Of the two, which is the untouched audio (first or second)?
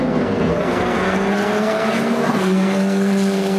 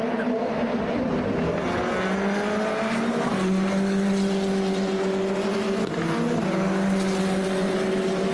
second